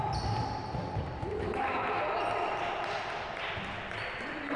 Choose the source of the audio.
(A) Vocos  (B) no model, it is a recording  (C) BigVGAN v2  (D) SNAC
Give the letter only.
B